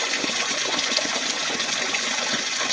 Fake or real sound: fake